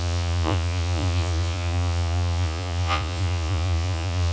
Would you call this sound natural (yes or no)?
no